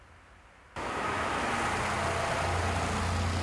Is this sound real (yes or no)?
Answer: yes